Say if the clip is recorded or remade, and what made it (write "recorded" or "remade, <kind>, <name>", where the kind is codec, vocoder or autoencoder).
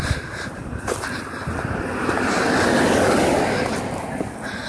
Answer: recorded